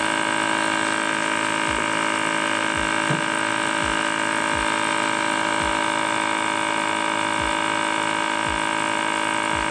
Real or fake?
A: real